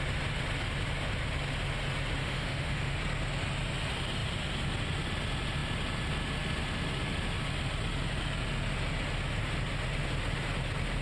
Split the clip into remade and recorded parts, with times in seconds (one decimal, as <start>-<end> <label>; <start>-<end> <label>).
0.0-2.2 recorded; 2.2-3.0 remade; 3.0-11.0 recorded